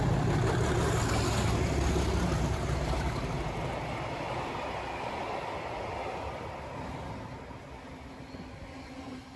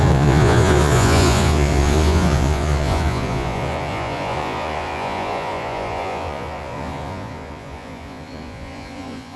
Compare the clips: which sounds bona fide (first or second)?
first